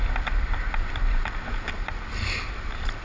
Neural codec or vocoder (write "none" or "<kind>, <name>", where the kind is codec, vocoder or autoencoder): none